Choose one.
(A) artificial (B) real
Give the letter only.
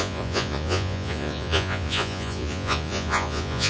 A